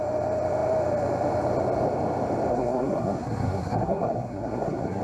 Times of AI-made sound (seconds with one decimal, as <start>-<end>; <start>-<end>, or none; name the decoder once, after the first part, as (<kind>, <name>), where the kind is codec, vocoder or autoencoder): 2.5-5.0 (codec, SNAC)